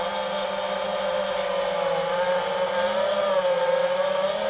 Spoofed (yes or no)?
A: no